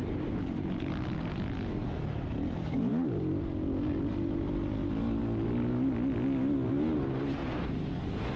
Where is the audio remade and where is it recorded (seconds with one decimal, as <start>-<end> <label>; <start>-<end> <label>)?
0.0-8.4 recorded